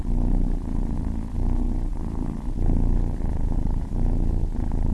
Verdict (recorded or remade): recorded